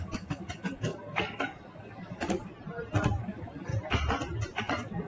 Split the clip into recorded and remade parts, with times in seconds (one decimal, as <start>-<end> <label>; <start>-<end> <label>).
0.0-2.5 remade; 2.5-3.2 recorded; 3.2-3.7 remade; 3.7-4.6 recorded; 4.6-5.1 remade